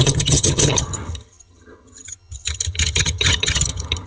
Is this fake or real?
fake